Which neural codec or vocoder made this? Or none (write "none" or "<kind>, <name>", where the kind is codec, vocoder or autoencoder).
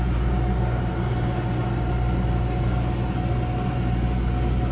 none